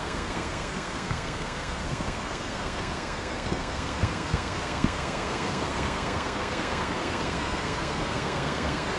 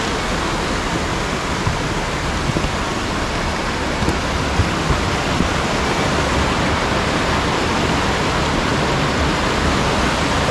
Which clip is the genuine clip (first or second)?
second